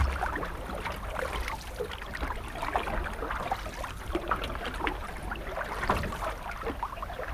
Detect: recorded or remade recorded